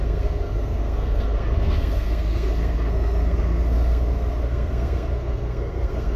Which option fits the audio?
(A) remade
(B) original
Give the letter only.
A